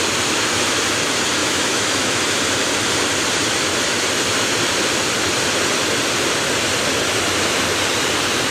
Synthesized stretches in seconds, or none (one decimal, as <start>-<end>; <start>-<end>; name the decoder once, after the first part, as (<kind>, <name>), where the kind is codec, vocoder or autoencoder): 1.4-2.2 (autoencoder, DAC-VAE)